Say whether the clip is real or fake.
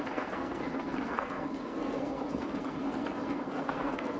fake